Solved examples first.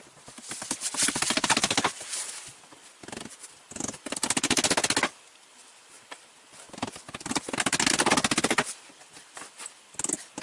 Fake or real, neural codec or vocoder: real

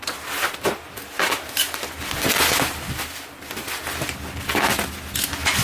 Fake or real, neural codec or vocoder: real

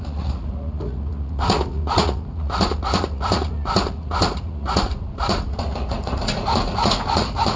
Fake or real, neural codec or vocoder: fake, vocoder, Vocos